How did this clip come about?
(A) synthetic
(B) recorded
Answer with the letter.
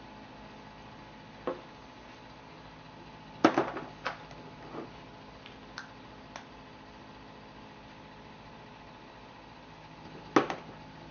B